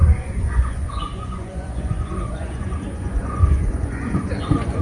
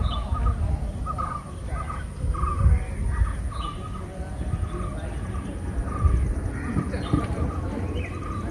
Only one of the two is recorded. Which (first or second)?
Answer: second